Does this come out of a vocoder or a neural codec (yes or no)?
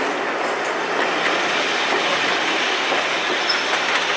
no